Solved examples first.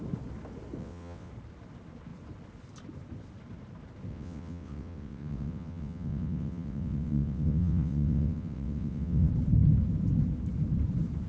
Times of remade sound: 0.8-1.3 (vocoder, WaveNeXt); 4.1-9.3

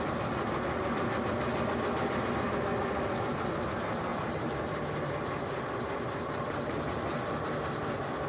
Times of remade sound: none

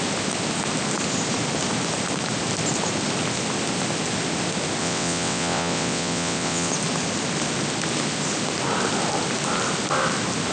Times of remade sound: 4.8-6.7 (vocoder, WaveNeXt)

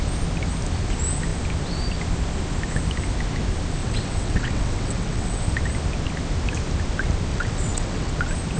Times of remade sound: 3.8-5.4 (vocoder, WaveNeXt); 7.3-8.1